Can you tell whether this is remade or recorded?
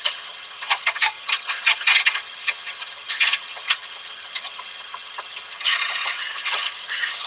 remade